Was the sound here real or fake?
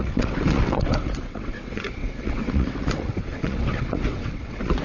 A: fake